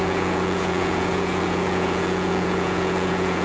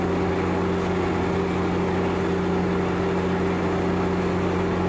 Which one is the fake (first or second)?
first